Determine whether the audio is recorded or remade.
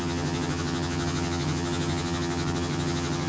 remade